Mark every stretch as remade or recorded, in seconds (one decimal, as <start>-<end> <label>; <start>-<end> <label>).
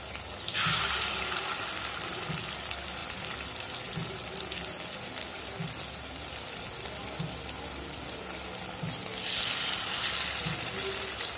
0.0-11.4 recorded